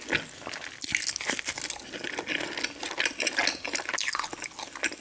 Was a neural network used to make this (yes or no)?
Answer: no